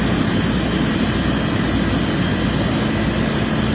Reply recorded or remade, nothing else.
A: recorded